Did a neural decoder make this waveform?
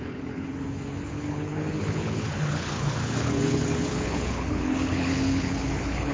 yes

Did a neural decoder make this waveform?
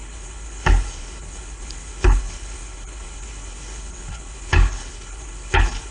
yes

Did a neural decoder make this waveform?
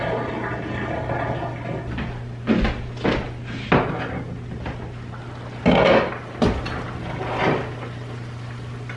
no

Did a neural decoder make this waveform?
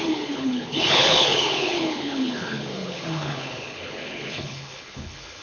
yes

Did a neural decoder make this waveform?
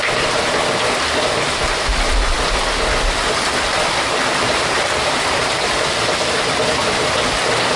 no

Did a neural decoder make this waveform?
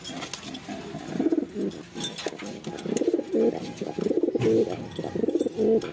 no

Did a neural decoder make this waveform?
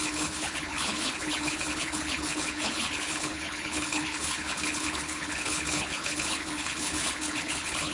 yes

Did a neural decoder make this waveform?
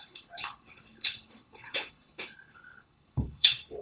yes